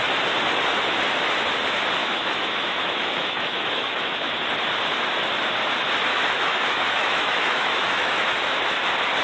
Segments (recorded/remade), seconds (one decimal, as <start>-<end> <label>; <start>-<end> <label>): 0.0-2.0 recorded; 2.0-4.3 remade; 4.3-6.1 recorded; 6.1-8.6 remade; 8.6-9.2 recorded